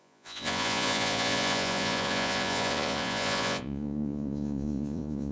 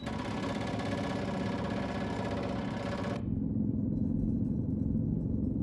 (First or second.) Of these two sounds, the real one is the second